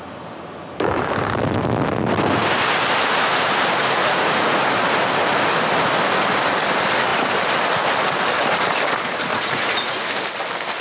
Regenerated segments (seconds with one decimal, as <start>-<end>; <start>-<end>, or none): 4.0-4.6; 9.3-10.0